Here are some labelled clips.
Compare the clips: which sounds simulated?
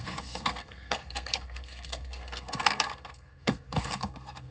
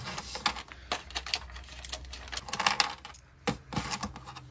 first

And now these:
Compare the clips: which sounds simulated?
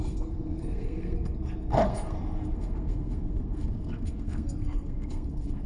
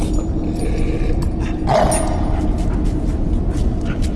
first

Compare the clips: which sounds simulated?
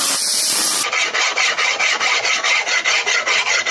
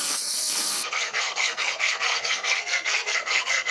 second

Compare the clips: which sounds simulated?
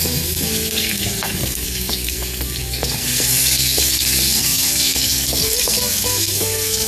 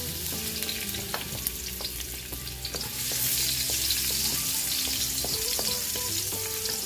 first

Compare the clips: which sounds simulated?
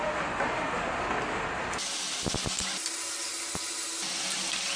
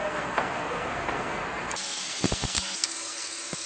second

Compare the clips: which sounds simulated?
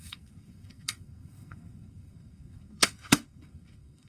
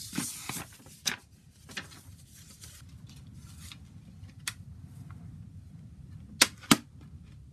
first